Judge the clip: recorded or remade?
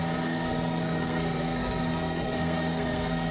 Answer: remade